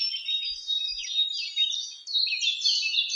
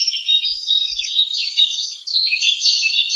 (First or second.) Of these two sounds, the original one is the first